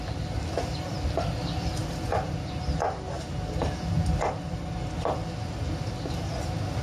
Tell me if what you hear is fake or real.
real